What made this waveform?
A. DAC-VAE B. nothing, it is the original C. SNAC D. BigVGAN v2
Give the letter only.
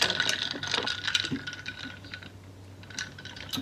B